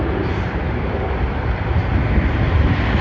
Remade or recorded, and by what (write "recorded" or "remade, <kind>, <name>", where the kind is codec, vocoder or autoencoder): recorded